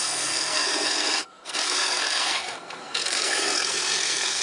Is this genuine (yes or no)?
no